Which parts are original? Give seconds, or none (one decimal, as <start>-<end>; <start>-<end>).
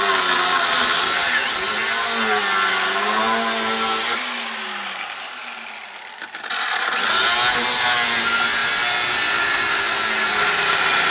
0.0-11.1